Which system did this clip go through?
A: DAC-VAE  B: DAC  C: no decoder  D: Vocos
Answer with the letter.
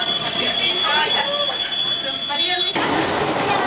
C